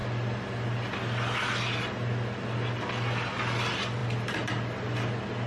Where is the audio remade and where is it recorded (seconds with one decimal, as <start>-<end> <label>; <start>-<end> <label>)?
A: 0.0-5.5 recorded